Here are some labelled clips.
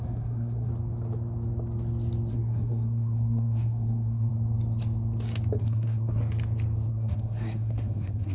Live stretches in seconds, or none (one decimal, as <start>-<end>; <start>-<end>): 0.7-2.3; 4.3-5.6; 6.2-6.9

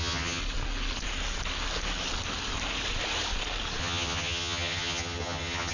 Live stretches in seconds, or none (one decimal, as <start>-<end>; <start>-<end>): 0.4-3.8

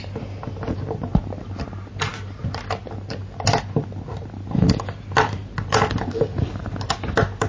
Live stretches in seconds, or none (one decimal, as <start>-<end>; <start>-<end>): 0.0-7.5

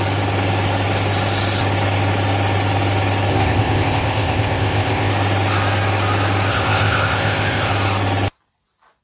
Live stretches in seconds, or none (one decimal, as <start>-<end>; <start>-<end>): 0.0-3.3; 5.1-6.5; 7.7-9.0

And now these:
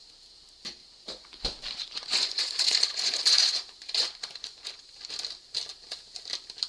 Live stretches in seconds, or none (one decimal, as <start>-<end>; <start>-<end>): 0.0-0.8; 4.8-6.7

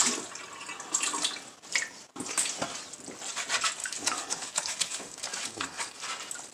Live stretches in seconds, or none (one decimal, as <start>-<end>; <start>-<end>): 0.0-3.8; 6.0-6.5